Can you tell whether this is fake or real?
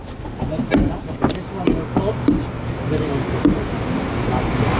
real